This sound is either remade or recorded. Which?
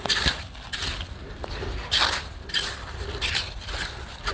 recorded